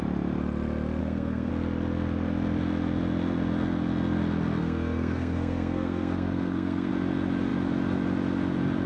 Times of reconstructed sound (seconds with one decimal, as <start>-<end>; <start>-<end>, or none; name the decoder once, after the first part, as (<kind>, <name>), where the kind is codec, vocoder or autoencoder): 1.0-1.5 (codec, SNAC); 4.6-6.9